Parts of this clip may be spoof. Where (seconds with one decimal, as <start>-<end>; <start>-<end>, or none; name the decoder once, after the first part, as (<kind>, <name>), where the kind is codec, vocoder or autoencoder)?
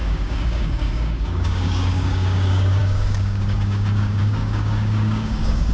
0.0-5.7 (codec, DAC)